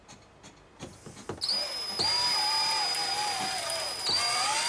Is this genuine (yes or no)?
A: yes